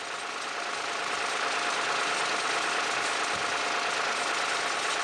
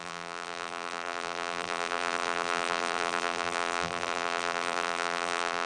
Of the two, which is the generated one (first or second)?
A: second